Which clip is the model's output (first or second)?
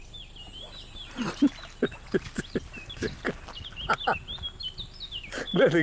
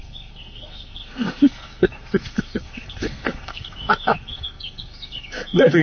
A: second